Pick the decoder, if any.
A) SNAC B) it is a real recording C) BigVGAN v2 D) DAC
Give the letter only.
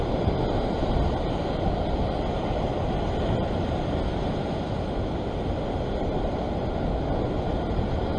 B